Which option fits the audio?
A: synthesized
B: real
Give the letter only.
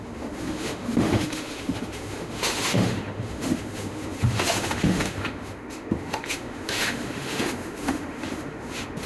A